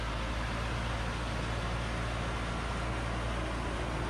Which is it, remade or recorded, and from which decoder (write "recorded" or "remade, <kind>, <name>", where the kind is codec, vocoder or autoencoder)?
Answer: recorded